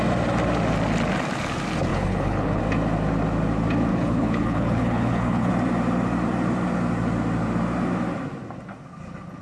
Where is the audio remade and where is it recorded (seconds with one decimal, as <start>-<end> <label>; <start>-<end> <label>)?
0.0-1.9 recorded; 1.9-2.6 remade; 2.6-3.9 recorded; 3.9-5.5 remade; 5.5-9.4 recorded